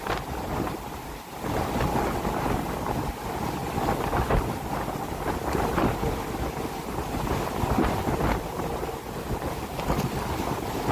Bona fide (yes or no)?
yes